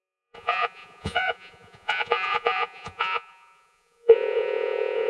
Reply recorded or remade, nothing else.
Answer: remade